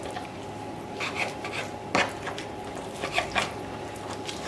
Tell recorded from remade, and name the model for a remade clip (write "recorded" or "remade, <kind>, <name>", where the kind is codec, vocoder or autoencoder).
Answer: recorded